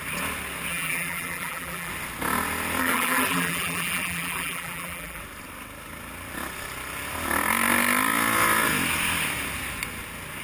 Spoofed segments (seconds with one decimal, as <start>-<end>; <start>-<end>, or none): 0.7-1.9; 2.8-5.2